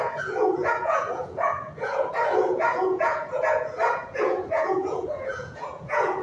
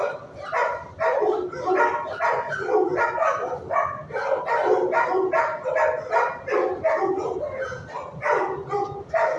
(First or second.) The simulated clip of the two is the first